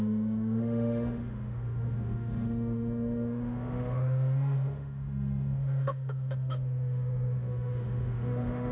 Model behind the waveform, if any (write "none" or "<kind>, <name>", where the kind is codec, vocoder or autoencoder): autoencoder, DAC-VAE